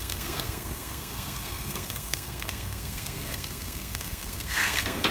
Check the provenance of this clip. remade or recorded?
remade